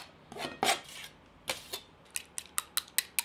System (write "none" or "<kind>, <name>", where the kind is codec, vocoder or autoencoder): none